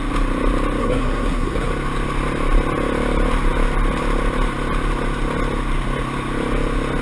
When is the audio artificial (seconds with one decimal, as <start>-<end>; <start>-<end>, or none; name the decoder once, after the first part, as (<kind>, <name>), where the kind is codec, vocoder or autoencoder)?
0.8-1.7 (codec, SNAC)